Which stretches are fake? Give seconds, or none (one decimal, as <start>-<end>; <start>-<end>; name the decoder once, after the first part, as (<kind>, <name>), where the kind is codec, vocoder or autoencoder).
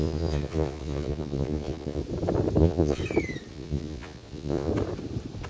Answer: 0.0-2.0 (vocoder, Vocos); 2.6-3.0; 3.5-4.7